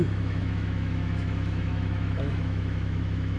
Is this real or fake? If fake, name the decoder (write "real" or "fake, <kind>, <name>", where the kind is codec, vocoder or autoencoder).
fake, autoencoder, DAC-VAE